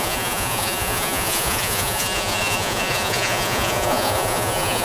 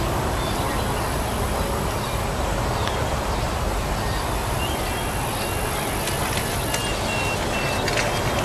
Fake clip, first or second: first